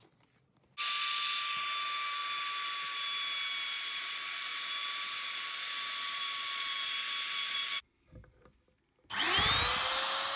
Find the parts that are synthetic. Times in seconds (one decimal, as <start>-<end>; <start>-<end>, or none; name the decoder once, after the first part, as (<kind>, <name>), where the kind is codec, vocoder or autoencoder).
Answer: none